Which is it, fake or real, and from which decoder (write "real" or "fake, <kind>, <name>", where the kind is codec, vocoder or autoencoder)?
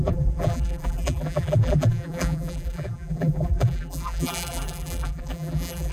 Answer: fake, vocoder, BigVGAN v2